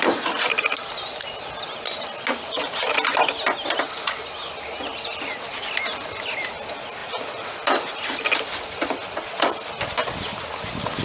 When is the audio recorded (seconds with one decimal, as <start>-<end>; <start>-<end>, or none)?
0.0-11.0